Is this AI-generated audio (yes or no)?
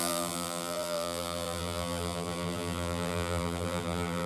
yes